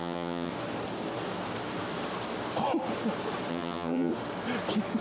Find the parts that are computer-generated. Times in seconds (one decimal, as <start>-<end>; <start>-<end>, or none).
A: 0.0-0.5; 3.5-4.1